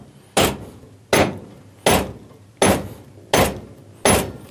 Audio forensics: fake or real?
real